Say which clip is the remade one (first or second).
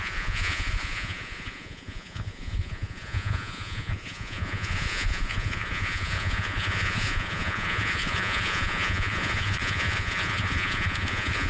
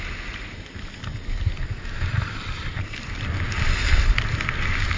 first